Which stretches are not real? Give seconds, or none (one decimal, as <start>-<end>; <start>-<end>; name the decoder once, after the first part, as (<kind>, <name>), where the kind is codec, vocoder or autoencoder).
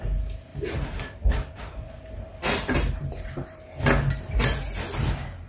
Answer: 0.5-3.8 (vocoder, BigVGAN v2)